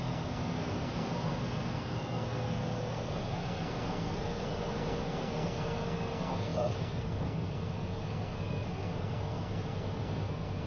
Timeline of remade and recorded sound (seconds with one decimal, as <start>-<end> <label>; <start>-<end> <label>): 0.0-10.7 remade